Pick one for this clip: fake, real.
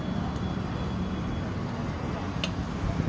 real